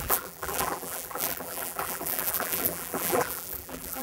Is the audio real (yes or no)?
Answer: no